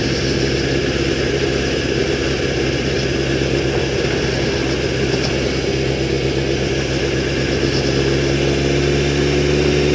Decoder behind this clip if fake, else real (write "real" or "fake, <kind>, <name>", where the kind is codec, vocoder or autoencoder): real